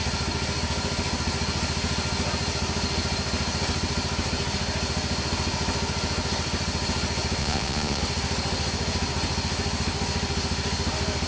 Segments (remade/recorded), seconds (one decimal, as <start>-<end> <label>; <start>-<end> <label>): 0.0-7.4 recorded; 7.4-8.0 remade; 8.0-11.3 recorded